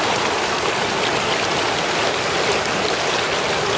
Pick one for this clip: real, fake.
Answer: real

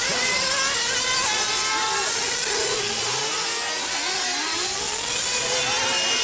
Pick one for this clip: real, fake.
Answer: real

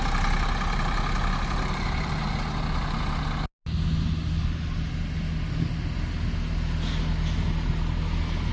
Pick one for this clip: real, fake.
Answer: real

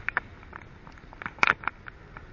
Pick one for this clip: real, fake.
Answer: real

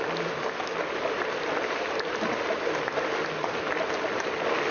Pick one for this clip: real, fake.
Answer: real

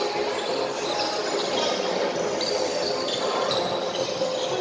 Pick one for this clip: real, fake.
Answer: real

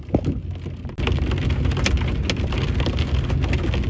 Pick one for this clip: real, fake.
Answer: real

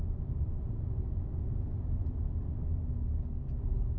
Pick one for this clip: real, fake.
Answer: real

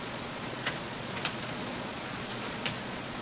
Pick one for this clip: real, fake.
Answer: fake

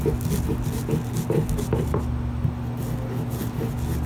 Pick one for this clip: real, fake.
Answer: real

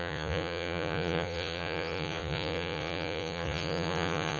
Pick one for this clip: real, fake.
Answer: fake